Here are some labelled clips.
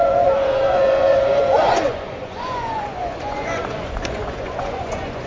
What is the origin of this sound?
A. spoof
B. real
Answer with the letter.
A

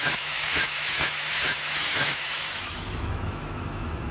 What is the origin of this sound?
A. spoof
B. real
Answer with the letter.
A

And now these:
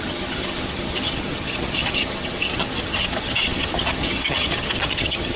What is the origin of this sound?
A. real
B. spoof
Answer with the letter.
B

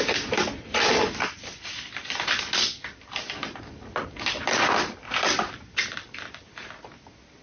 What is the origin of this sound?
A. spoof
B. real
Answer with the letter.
B